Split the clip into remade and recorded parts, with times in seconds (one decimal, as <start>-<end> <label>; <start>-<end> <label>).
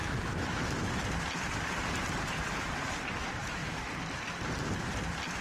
0.0-0.9 remade; 0.9-3.4 recorded; 3.4-3.9 remade; 3.9-5.4 recorded